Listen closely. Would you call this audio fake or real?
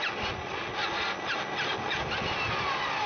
real